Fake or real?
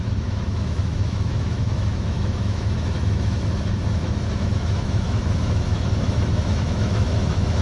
fake